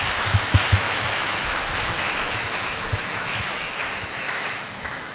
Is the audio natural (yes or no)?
no